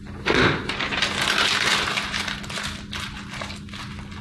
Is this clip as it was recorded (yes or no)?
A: yes